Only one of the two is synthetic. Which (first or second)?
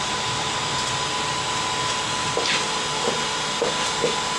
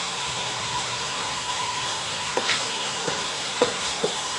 second